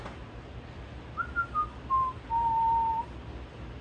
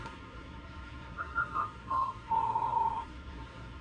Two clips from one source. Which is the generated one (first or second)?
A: second